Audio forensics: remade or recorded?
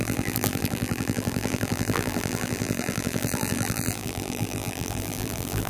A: remade